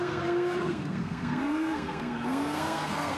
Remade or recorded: remade